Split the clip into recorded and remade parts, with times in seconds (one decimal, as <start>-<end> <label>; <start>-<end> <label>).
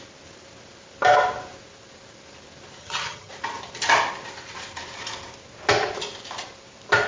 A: 0.0-2.8 recorded; 2.8-3.3 remade; 3.3-7.1 recorded